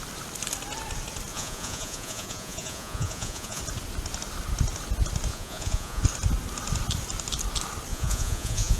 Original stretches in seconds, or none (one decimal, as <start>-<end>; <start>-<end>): 0.0-1.3; 3.6-5.3; 6.0-7.9